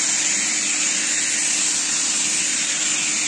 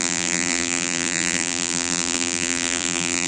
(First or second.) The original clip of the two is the first